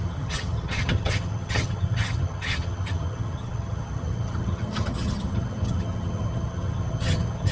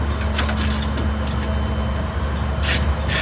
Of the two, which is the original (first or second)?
second